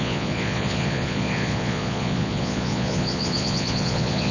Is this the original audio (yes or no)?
no